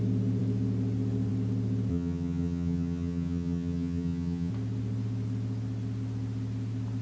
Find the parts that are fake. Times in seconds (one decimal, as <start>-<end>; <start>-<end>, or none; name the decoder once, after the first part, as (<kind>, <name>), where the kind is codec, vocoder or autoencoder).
1.9-4.5 (vocoder, HiFi-GAN)